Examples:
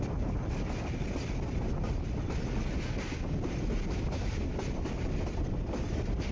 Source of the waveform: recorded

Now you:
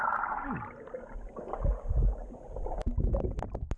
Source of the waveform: recorded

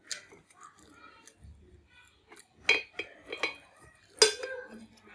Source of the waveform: recorded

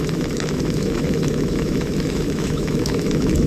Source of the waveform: remade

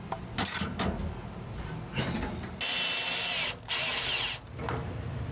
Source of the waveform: recorded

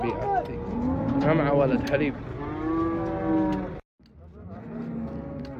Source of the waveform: recorded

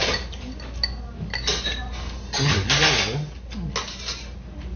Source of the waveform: recorded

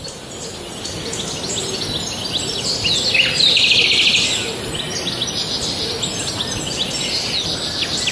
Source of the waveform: recorded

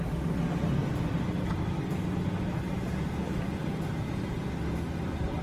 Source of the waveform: recorded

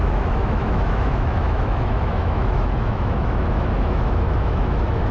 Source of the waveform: remade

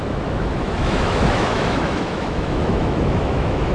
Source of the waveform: remade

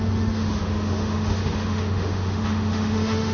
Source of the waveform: remade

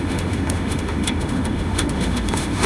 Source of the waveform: remade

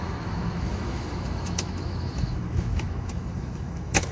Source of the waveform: remade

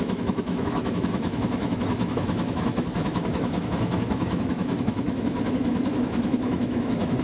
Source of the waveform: remade